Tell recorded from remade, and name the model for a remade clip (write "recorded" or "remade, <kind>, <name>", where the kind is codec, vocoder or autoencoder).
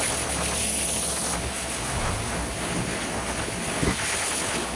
recorded